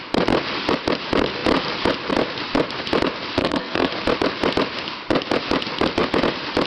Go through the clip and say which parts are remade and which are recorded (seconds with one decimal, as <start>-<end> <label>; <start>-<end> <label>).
0.0-3.4 recorded; 3.4-3.9 remade; 3.9-6.7 recorded